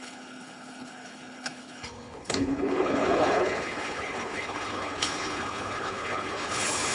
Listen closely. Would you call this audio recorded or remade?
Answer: remade